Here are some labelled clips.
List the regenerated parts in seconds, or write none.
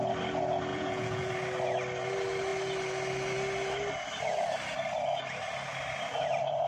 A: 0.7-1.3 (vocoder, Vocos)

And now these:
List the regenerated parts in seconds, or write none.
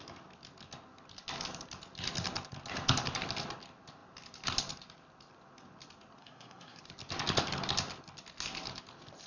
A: 6.2-6.8 (codec, SNAC)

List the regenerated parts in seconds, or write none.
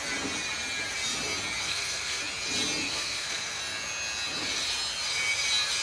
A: 1.6-2.2 (codec, SNAC); 2.9-3.6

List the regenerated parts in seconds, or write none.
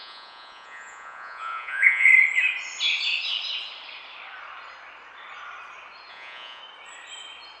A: 0.0-2.1 (vocoder, Vocos); 6.1-6.6